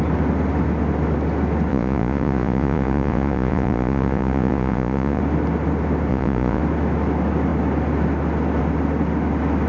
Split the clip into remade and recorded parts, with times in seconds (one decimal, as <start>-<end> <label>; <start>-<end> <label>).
0.0-1.7 recorded; 1.7-5.2 remade; 5.2-6.1 recorded; 6.1-6.6 remade; 6.6-9.7 recorded